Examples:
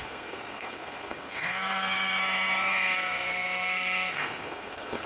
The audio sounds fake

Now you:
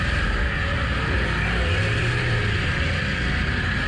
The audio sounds real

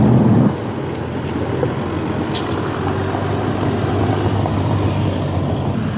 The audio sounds real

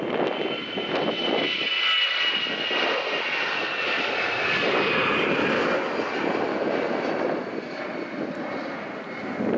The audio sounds real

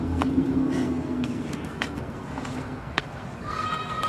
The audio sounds fake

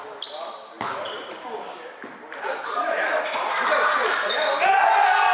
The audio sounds real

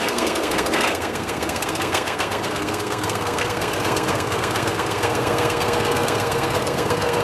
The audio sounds fake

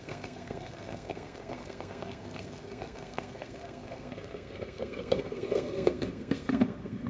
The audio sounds fake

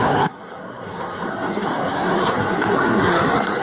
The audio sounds fake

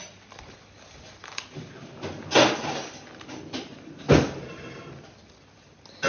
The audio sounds real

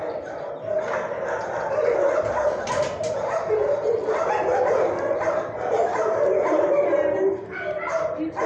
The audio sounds real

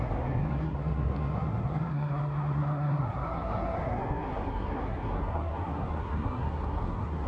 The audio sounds fake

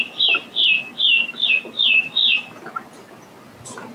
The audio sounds real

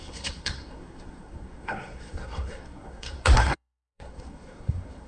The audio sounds fake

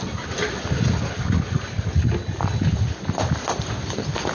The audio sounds real